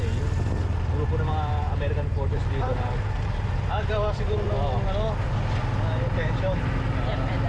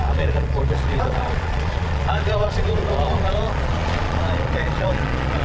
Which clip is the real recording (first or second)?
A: first